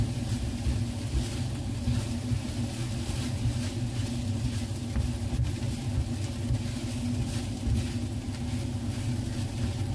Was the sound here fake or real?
real